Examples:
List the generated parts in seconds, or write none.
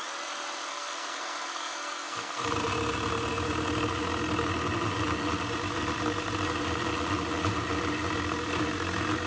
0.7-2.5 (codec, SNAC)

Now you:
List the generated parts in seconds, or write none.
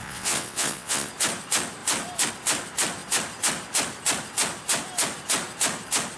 0.0-1.1 (vocoder, WaveNeXt)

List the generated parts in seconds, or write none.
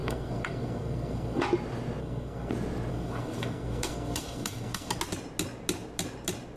0.0-1.4 (codec, SNAC); 2.0-2.5; 2.9-4.9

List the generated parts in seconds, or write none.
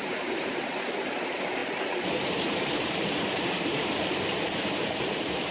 0.0-5.5 (vocoder, BigVGAN v2)